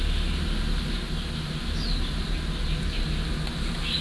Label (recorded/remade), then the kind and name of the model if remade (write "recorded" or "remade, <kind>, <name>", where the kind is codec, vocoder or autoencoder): recorded